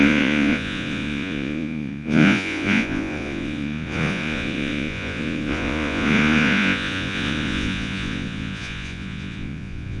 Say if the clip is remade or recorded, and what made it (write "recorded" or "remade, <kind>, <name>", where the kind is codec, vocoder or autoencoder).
remade, vocoder, Vocos